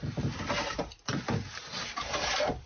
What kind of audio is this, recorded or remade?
recorded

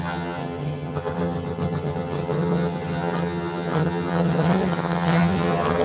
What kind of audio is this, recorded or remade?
remade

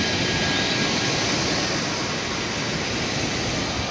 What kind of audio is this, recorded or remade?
recorded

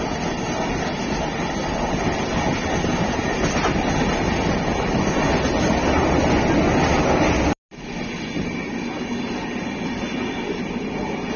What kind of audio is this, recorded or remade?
recorded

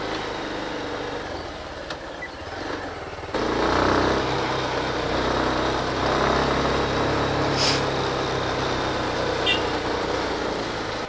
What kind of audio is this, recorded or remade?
recorded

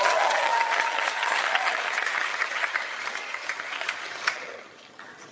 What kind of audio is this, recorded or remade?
remade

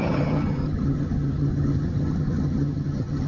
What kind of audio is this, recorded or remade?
remade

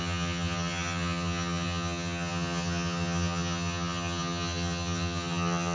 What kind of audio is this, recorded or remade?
remade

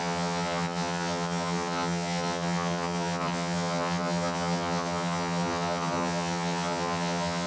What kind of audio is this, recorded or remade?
remade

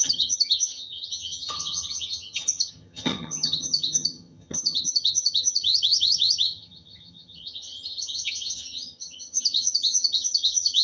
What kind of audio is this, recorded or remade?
remade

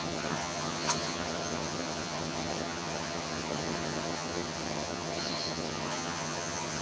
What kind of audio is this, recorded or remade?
remade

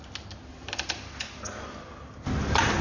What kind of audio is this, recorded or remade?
recorded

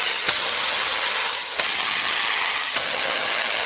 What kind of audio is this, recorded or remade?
remade